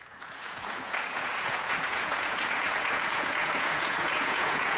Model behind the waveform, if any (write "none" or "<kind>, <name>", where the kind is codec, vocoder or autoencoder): vocoder, Vocos